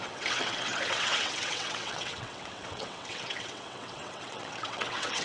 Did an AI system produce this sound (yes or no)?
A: yes